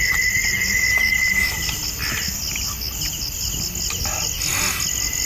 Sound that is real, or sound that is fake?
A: real